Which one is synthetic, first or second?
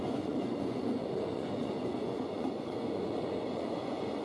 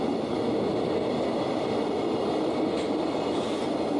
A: first